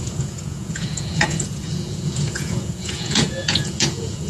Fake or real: fake